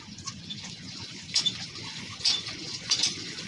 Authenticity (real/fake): fake